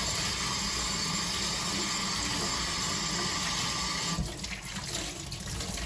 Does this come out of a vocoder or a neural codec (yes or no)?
no